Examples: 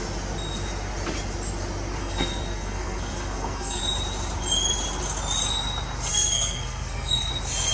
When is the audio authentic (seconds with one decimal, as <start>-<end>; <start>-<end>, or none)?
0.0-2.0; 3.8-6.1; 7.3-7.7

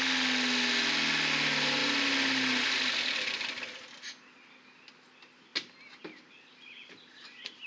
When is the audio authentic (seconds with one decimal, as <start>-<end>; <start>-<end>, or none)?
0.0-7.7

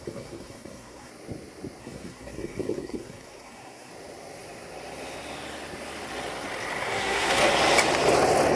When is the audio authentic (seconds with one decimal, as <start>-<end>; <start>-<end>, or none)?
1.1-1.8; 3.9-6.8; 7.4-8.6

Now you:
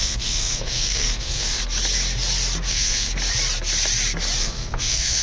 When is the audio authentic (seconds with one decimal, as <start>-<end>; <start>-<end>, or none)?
1.6-2.7; 3.1-4.4

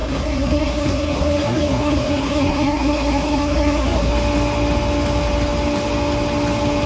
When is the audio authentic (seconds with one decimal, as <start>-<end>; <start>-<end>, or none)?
4.1-6.9

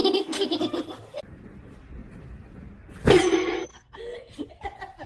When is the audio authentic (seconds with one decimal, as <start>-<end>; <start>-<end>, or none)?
0.6-3.7; 4.3-5.1

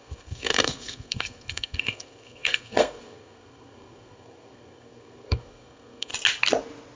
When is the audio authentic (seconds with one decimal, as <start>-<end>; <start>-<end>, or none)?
6.1-7.0

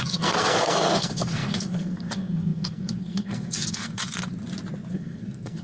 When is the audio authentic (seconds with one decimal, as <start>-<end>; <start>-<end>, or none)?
4.3-4.9